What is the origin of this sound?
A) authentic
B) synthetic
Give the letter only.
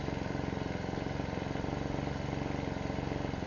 A